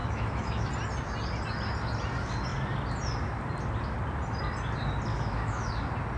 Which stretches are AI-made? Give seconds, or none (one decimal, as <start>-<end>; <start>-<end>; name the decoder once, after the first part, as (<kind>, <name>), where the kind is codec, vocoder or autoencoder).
0.0-0.7 (autoencoder, DAC-VAE); 5.1-5.7